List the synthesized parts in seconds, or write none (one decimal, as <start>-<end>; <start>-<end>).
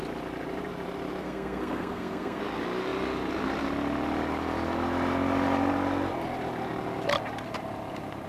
1.2-2.4